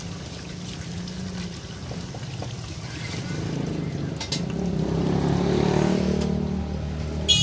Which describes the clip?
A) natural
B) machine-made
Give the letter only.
A